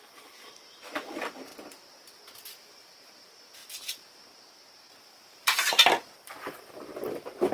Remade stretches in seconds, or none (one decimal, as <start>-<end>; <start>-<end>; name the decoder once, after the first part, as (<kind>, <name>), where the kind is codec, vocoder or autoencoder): 0.0-1.5 (vocoder, BigVGAN v2); 2.7-7.5

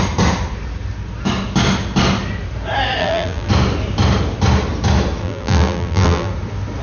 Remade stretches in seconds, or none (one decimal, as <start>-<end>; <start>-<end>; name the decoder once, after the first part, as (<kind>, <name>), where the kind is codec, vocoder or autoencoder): 3.0-3.5 (vocoder, BigVGAN v2); 5.2-6.3

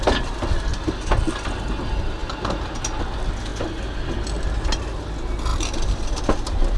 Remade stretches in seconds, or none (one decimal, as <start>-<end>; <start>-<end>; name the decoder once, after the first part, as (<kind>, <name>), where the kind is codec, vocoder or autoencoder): none

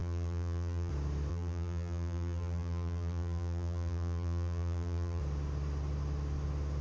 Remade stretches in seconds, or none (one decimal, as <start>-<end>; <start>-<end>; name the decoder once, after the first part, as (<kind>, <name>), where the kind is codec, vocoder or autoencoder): 0.0-0.9 (vocoder, BigVGAN v2); 1.3-5.2